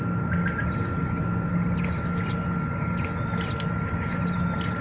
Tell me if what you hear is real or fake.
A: real